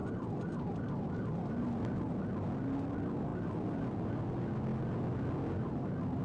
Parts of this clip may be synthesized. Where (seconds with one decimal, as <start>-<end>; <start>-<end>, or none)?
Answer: none